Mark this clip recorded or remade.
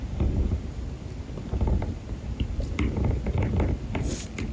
recorded